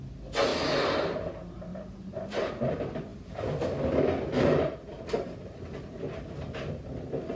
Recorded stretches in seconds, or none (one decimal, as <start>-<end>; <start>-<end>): 0.0-1.7; 2.5-7.3